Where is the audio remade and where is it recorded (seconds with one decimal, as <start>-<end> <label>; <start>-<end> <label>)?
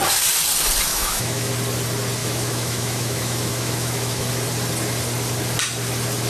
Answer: 0.0-0.9 recorded; 0.9-1.5 remade; 1.5-2.2 recorded; 2.2-4.3 remade; 4.3-6.3 recorded